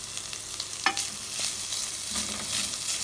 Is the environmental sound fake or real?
real